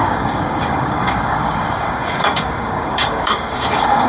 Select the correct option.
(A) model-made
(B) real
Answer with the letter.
A